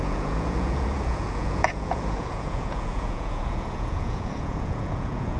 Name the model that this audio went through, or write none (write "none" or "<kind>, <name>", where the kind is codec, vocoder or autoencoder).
vocoder, Vocos